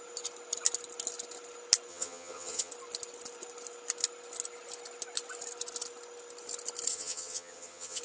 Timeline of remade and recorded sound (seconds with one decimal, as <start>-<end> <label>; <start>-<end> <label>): 0.0-1.9 recorded; 1.9-2.7 remade; 2.7-6.9 recorded; 6.9-8.0 remade